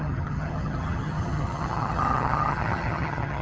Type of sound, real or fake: fake